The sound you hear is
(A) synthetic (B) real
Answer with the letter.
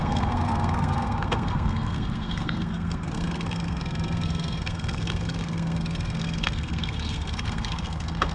A